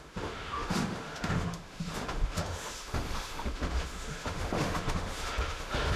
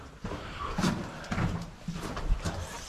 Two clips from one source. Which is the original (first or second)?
second